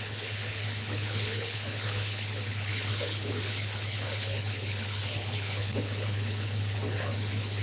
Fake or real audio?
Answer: fake